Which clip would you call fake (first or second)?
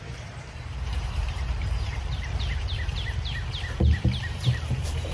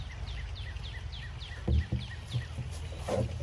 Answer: first